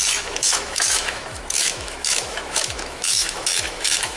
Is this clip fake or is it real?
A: fake